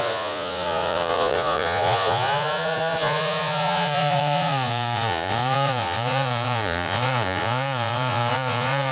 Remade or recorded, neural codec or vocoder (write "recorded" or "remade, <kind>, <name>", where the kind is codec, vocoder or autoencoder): remade, vocoder, Vocos